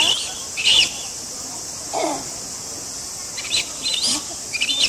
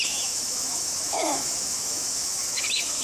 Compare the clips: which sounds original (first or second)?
first